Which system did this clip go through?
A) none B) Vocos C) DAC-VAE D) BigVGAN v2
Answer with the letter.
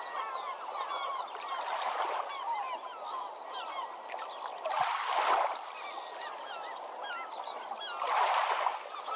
A